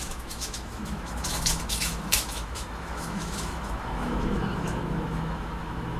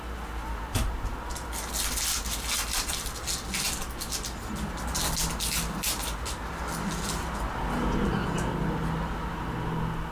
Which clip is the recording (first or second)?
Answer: second